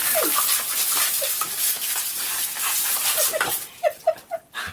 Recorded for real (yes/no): yes